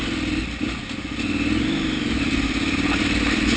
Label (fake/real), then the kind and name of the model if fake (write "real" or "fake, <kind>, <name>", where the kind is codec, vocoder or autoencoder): real